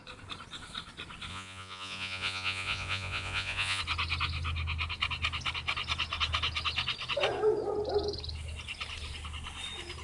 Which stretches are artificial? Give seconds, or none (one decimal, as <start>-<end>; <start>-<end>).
1.3-3.8